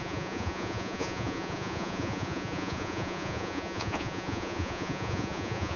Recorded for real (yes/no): no